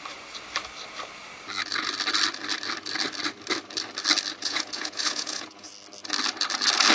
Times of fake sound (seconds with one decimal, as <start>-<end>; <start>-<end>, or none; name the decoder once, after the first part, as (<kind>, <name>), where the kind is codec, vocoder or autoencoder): 4.4-5.7 (vocoder, Vocos)